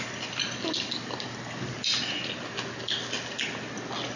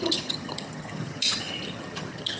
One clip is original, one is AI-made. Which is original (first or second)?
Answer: first